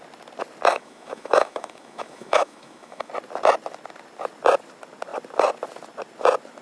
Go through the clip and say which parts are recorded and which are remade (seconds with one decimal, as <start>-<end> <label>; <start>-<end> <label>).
0.0-0.7 recorded; 0.7-3.1 remade; 3.1-6.6 recorded